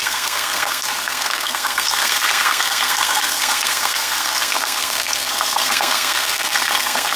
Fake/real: fake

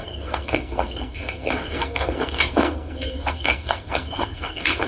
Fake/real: fake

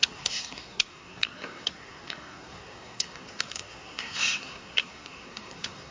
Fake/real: fake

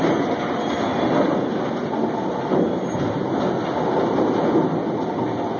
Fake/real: real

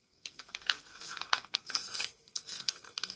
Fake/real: fake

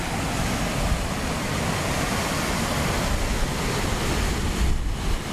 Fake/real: real